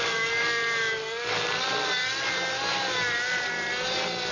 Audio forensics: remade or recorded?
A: recorded